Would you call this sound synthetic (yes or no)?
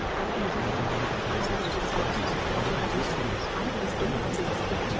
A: yes